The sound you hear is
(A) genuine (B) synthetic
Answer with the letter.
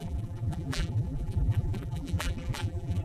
B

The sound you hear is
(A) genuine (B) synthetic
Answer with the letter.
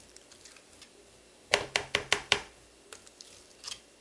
A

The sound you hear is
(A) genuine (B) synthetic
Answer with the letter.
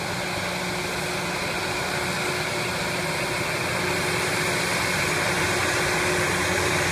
A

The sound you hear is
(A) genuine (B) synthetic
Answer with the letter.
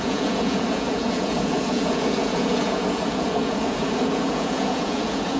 B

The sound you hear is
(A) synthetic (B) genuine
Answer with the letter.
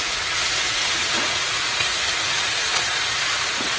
A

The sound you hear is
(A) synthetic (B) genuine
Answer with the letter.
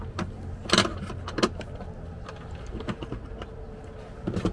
B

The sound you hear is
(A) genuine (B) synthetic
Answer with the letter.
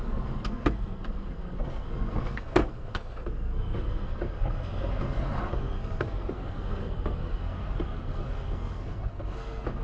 B